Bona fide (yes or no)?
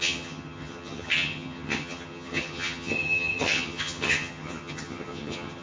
no